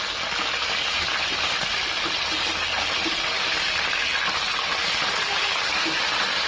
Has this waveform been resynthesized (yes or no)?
no